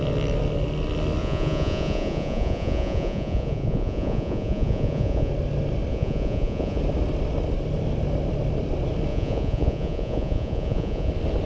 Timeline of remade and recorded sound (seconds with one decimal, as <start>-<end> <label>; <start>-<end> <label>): 0.0-1.2 recorded; 1.2-5.3 remade; 5.3-5.9 recorded; 5.9-6.8 remade; 6.8-9.1 recorded; 9.1-11.1 remade; 11.1-11.5 recorded